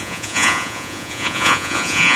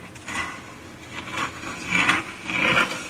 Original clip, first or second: second